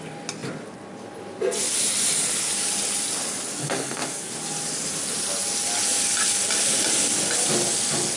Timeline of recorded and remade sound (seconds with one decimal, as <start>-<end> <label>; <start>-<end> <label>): 0.0-3.6 recorded; 3.6-4.3 remade; 4.3-8.2 recorded